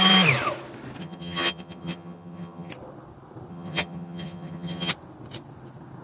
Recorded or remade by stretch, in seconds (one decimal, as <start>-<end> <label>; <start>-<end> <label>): 0.0-1.0 recorded; 1.0-2.7 remade; 2.7-3.5 recorded; 3.5-4.9 remade; 4.9-6.0 recorded